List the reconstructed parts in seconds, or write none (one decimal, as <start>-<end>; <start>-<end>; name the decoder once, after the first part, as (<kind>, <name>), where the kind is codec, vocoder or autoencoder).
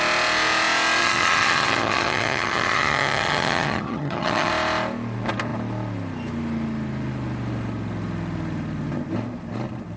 1.0-4.5 (vocoder, HiFi-GAN)